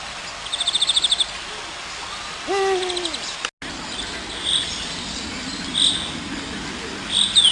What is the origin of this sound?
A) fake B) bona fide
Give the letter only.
B